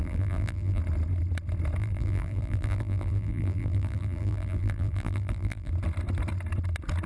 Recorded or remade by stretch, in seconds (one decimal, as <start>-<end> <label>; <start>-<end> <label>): 0.0-0.8 remade; 0.8-1.8 recorded; 1.8-5.7 remade; 5.7-7.1 recorded